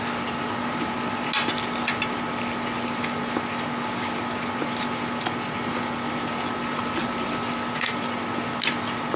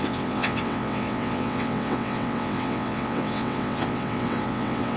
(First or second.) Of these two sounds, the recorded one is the first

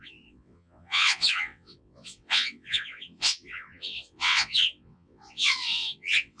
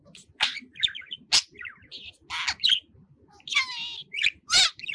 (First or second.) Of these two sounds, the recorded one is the second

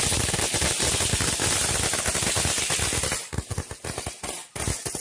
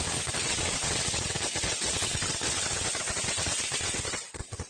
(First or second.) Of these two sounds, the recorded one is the first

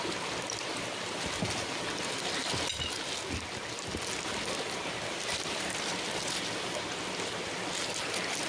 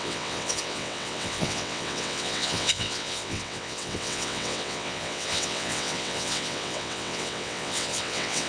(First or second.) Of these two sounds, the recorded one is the first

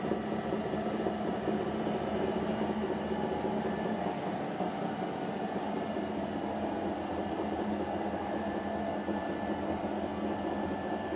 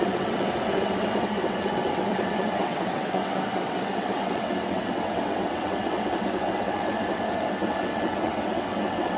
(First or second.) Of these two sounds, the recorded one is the first